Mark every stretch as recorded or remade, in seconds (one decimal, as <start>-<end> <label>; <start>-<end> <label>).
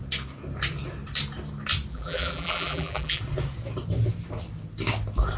0.0-1.9 recorded; 1.9-3.2 remade; 3.2-5.4 recorded